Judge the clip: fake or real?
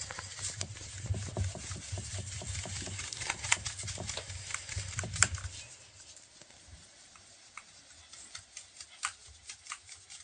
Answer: real